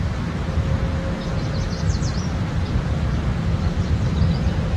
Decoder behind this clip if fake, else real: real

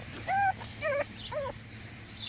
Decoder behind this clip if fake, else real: fake, vocoder, BigVGAN v2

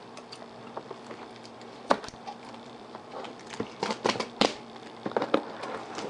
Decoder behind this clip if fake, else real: fake, vocoder, BigVGAN v2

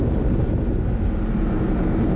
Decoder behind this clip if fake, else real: fake, vocoder, BigVGAN v2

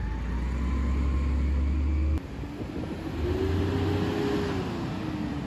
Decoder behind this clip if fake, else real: real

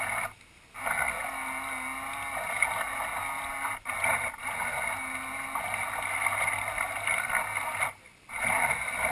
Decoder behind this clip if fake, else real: real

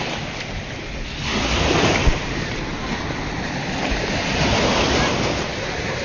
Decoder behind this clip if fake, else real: real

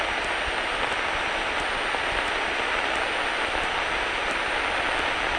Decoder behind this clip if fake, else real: real